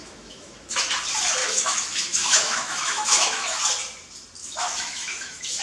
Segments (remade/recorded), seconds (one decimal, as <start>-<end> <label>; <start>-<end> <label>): 0.0-0.8 remade; 0.8-1.4 recorded; 1.4-3.6 remade; 3.6-4.4 recorded; 4.4-5.6 remade